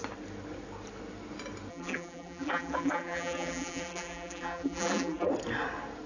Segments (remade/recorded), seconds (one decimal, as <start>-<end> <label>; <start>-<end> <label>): 0.0-1.7 recorded; 1.7-5.3 remade; 5.3-6.1 recorded